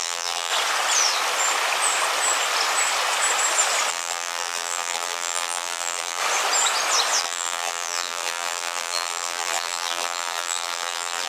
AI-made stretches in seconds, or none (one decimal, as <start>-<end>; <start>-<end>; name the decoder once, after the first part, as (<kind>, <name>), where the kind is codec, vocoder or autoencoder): 0.0-0.5 (vocoder, BigVGAN v2); 3.9-6.2; 7.2-11.3